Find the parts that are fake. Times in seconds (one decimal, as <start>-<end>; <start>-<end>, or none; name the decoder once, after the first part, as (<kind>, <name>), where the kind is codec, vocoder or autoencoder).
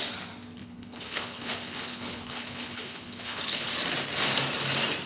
0.6-3.7 (codec, HILCodec)